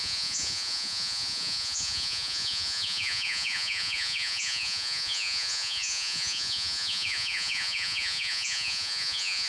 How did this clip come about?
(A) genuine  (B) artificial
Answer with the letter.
B